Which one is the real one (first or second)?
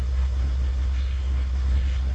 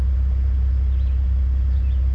second